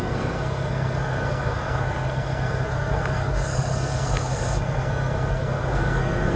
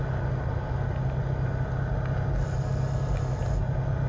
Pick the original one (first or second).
second